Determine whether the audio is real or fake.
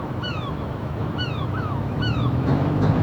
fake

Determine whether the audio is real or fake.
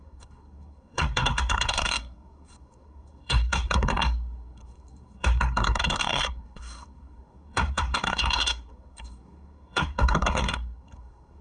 fake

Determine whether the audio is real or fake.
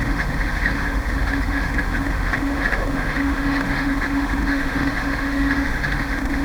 fake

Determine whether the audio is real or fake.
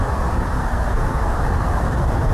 fake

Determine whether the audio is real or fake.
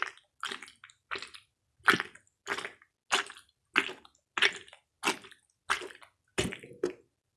real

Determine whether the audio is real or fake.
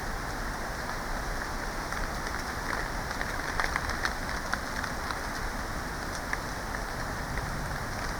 real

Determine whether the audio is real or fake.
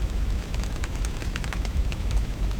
fake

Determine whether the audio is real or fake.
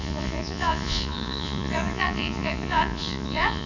fake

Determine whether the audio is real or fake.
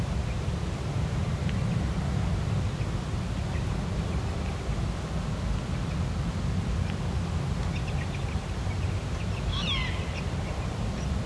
real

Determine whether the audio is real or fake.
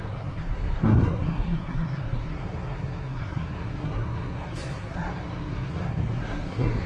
fake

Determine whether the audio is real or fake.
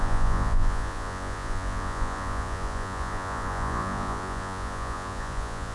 fake